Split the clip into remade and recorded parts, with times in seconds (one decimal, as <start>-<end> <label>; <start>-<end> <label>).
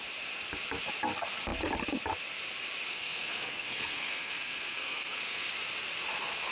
0.0-2.9 recorded; 2.9-5.5 remade; 5.5-6.5 recorded